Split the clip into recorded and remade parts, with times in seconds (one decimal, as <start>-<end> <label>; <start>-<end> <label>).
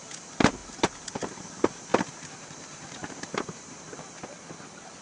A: 0.0-1.9 recorded; 1.9-3.8 remade; 3.8-5.0 recorded